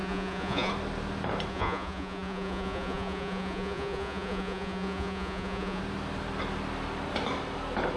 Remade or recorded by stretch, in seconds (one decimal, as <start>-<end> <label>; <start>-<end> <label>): 0.0-0.7 remade; 0.7-1.5 recorded; 1.5-5.8 remade; 5.8-8.0 recorded